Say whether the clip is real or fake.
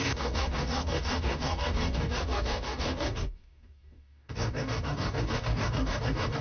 fake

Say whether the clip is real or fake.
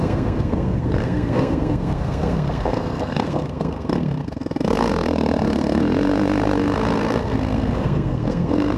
fake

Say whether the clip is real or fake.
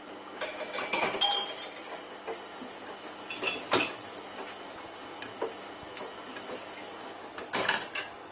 real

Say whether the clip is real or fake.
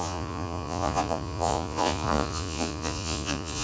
fake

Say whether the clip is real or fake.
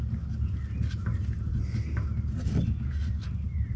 real